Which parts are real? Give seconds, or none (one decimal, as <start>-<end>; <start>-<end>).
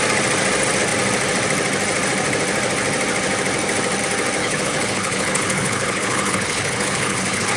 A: 0.0-4.4